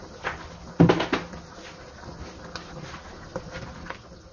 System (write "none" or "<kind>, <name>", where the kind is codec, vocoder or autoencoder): none